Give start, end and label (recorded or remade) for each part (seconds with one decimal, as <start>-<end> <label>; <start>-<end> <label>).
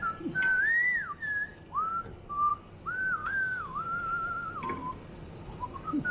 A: 0.0-3.2 recorded; 3.2-4.5 remade; 4.5-6.1 recorded